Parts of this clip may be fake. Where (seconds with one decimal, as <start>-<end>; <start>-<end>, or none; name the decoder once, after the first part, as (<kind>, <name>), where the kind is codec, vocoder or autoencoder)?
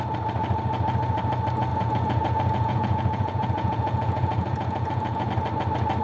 1.7-5.3 (vocoder, Vocos)